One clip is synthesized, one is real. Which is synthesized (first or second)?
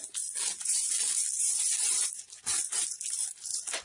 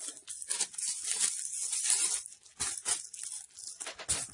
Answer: first